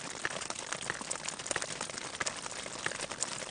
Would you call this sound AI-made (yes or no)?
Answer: no